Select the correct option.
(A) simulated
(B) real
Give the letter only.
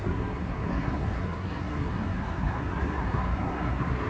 A